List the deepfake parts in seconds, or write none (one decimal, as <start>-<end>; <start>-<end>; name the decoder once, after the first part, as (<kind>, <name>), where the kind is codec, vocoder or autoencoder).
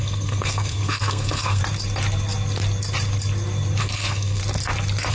0.0-1.6 (codec, SNAC); 3.8-4.4